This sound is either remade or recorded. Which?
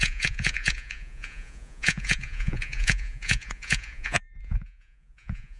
remade